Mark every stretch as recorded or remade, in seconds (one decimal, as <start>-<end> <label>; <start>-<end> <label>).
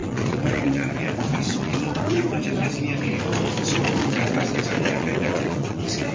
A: 0.0-2.8 remade; 2.8-4.0 recorded; 4.0-6.1 remade